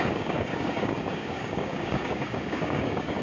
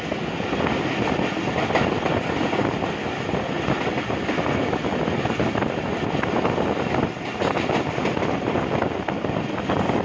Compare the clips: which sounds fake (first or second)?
first